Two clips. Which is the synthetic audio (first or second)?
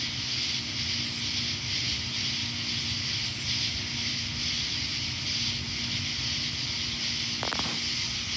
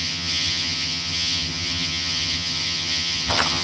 second